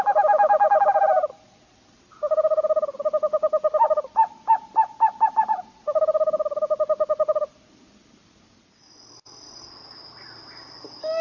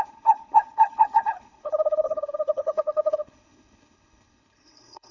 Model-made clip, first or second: second